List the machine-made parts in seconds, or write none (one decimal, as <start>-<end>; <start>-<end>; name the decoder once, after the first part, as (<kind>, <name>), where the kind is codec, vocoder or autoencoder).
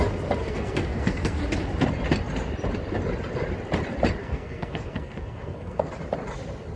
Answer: 0.4-1.4 (codec, SNAC); 4.2-5.9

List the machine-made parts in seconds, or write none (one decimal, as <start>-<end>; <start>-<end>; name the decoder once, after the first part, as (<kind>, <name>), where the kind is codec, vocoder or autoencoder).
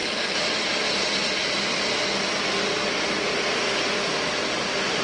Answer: none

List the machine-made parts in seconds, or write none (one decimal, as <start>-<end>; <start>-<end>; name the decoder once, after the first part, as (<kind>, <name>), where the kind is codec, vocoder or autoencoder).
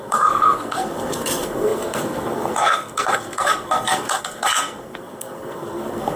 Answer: 0.0-6.2 (codec, SNAC)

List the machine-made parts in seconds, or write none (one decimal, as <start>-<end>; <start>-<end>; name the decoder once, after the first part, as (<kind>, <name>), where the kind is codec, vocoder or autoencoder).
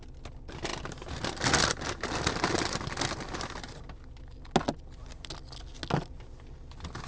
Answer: none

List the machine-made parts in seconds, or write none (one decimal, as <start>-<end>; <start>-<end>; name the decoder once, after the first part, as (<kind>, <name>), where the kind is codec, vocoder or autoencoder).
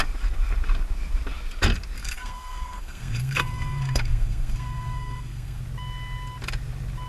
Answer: 2.0-5.6 (codec, SNAC)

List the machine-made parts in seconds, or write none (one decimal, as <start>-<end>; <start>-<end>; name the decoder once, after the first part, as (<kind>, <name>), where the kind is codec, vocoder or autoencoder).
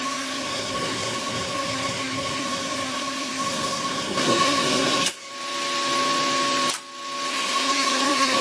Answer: 0.0-5.3 (codec, SNAC); 7.3-8.4